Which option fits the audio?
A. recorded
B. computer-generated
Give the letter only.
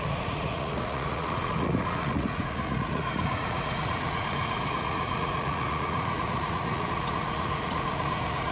B